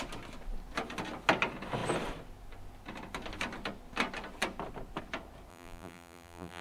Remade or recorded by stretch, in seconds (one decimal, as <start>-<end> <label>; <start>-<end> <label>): 0.0-5.5 recorded; 5.5-6.6 remade